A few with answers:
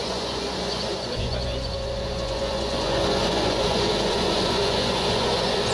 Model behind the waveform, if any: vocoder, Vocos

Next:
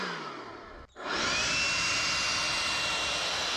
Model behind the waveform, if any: none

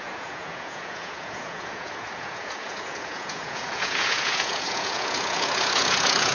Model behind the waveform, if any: vocoder, Vocos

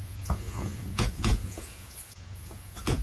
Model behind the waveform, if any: vocoder, Vocos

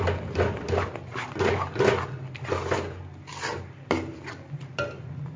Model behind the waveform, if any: none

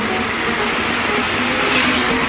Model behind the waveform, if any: none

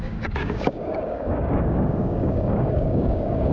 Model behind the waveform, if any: codec, DAC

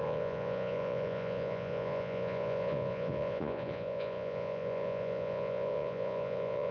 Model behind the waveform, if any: vocoder, Vocos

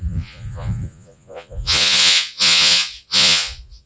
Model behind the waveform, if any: vocoder, Vocos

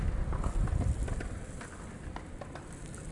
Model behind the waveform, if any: none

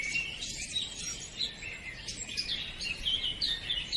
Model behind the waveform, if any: none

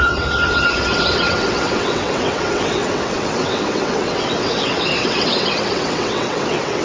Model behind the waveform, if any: vocoder, WaveNeXt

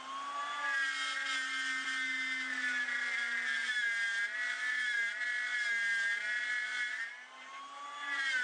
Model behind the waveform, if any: none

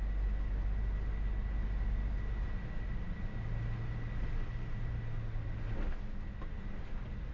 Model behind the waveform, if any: none